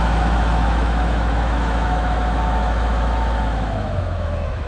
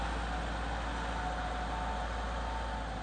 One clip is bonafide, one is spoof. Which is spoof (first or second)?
first